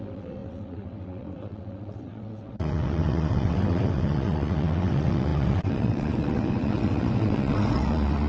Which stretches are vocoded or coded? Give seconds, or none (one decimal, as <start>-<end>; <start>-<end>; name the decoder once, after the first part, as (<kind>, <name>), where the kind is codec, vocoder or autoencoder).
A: 0.0-8.3 (vocoder, WaveNeXt)